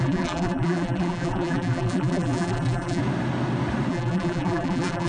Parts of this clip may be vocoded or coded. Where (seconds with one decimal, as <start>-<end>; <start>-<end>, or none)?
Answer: 0.0-3.0; 3.9-5.1